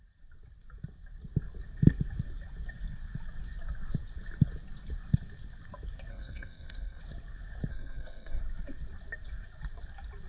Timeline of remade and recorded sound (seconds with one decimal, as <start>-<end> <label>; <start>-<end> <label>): 0.0-6.1 recorded; 6.1-7.0 remade; 7.0-7.7 recorded; 7.7-8.4 remade; 8.4-10.3 recorded